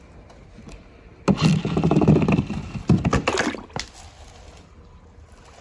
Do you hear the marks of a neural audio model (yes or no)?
no